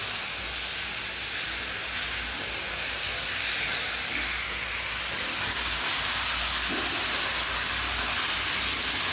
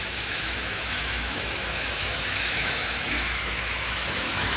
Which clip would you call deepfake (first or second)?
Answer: second